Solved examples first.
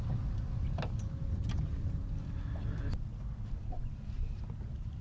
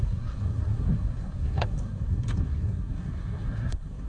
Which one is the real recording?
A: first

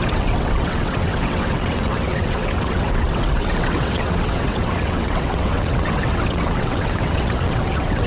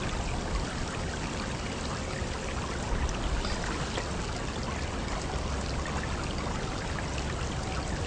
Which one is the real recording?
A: second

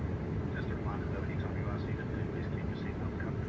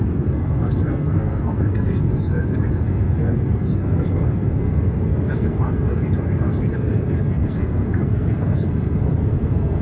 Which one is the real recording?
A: first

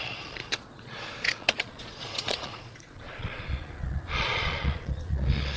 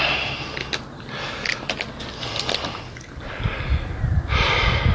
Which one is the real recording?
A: second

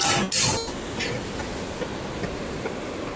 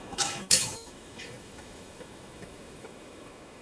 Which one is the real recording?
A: first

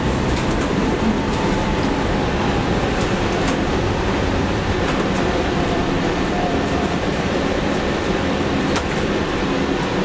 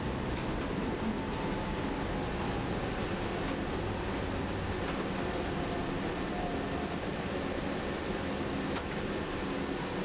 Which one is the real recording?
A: second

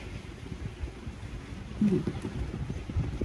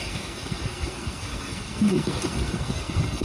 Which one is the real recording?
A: first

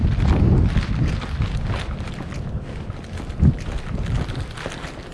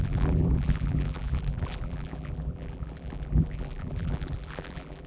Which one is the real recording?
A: first